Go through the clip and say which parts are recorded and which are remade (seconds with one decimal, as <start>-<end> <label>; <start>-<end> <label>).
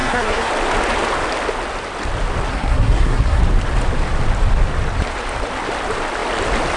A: 0.0-0.5 remade; 0.5-2.5 recorded; 2.5-3.4 remade; 3.4-6.8 recorded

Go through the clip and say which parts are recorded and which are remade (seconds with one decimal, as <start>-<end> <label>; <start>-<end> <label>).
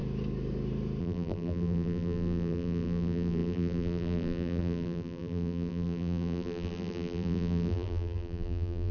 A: 0.0-1.0 recorded; 1.0-8.9 remade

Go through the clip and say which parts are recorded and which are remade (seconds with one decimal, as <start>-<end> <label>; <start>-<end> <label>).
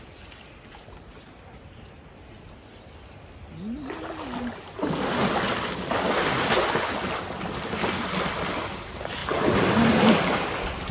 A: 0.0-9.2 recorded; 9.2-10.2 remade; 10.2-10.9 recorded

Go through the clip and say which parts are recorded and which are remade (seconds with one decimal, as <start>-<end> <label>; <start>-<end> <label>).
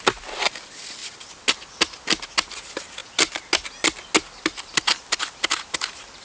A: 0.0-6.2 recorded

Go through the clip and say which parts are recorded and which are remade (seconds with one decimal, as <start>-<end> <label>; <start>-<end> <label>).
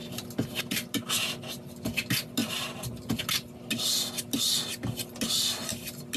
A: 0.0-2.4 recorded; 2.4-3.2 remade; 3.2-6.2 recorded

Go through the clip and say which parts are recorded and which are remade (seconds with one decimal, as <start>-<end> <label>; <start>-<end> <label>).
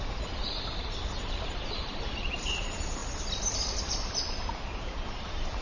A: 0.0-3.0 remade; 3.0-3.8 recorded; 3.8-5.6 remade